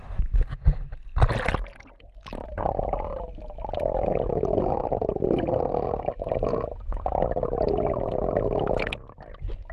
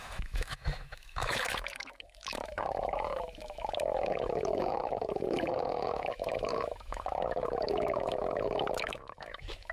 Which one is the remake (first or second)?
second